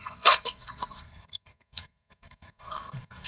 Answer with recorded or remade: remade